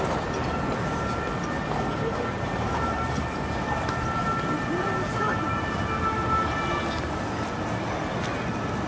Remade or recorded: recorded